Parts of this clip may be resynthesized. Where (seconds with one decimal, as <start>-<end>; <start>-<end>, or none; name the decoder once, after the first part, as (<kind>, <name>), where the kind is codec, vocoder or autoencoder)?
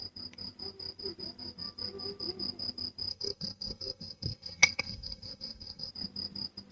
3.1-5.9 (codec, SNAC)